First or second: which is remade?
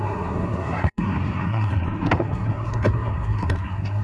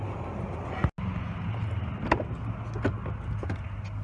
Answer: first